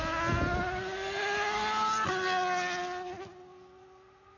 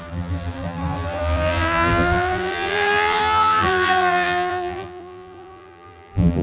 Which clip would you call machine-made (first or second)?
second